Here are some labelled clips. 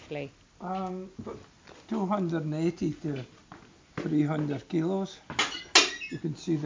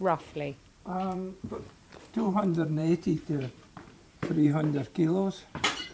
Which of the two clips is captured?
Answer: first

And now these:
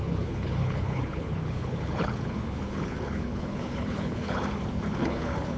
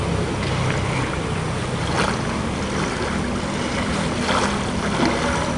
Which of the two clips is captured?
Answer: second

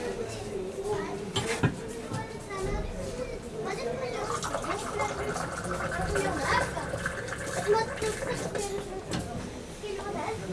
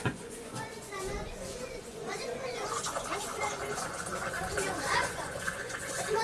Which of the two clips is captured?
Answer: first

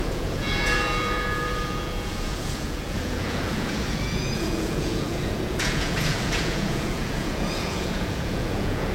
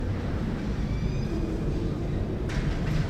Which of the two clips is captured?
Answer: second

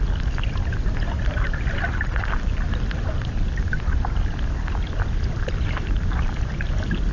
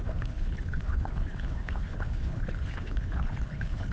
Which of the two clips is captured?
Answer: first